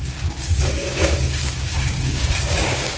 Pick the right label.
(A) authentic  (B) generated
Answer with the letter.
B